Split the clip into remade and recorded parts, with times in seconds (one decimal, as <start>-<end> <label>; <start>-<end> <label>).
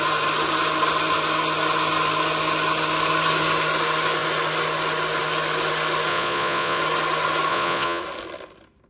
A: 0.0-6.1 recorded; 6.1-6.8 remade; 6.8-7.5 recorded; 7.5-8.0 remade; 8.0-8.9 recorded